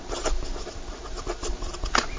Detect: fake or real real